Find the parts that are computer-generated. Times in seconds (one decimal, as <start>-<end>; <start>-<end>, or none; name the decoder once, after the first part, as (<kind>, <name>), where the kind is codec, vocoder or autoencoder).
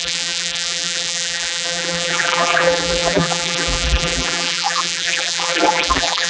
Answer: 0.0-6.3 (vocoder, BigVGAN v2)